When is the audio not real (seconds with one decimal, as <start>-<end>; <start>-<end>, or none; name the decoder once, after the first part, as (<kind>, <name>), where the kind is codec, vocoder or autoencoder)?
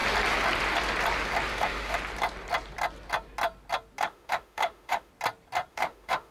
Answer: 1.5-2.0 (autoencoder, DAC-VAE); 4.0-5.1; 5.7-6.3